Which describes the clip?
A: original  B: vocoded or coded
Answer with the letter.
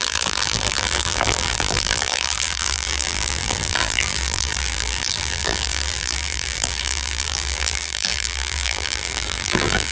B